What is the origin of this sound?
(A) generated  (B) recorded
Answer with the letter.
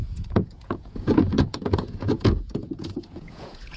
A